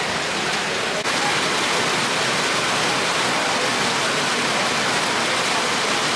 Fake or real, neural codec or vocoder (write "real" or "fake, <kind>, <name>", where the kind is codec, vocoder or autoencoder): real